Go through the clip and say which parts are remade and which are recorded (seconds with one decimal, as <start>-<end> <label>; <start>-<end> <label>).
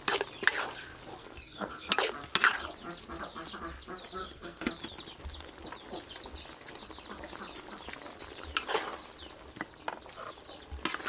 0.0-1.2 recorded; 1.2-1.9 remade; 1.9-4.2 recorded; 4.2-4.7 remade; 4.7-11.1 recorded